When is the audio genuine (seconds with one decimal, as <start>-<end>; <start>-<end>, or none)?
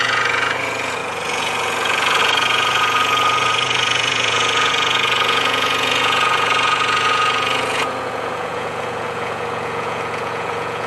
none